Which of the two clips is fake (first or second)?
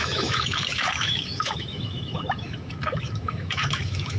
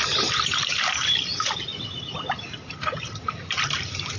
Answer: first